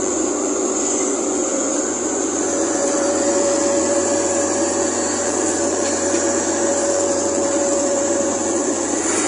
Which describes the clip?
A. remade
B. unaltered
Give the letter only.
A